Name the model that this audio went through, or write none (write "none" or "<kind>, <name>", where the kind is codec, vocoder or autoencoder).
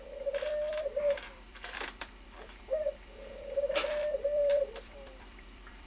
vocoder, BigVGAN v2